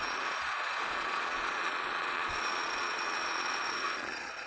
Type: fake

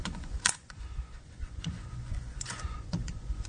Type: fake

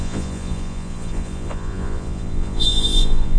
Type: fake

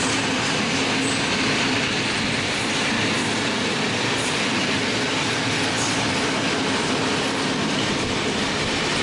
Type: real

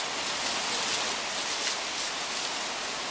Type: real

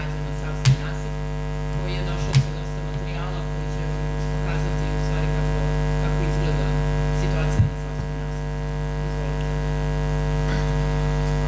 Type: real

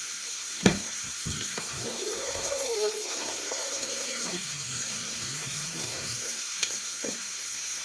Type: fake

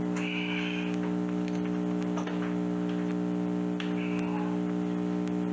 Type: real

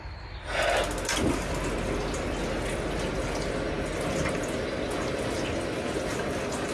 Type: real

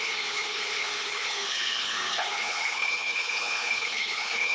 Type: fake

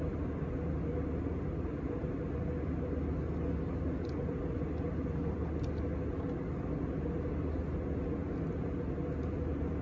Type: real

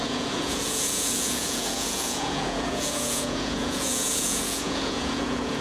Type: fake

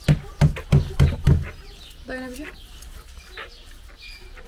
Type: real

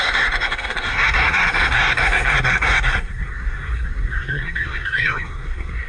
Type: fake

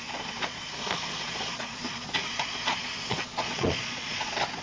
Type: fake